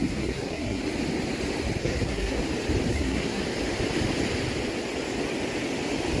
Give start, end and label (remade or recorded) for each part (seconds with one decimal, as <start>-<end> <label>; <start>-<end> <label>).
0.0-0.8 remade; 0.8-1.8 recorded; 1.8-2.4 remade; 2.4-2.9 recorded; 2.9-3.4 remade; 3.4-6.2 recorded